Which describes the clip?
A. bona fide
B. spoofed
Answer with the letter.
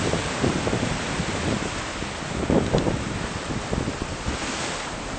A